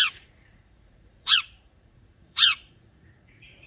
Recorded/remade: remade